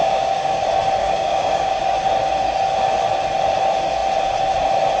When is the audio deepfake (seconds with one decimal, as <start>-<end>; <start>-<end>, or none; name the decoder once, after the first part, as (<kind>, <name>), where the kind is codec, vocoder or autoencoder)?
0.0-0.6 (codec, DAC); 1.0-1.8